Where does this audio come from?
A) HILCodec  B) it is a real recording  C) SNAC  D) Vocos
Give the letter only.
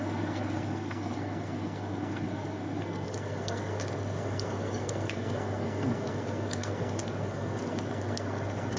C